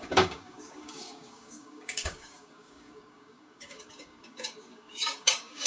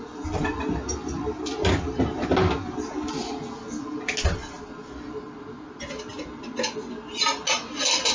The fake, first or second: first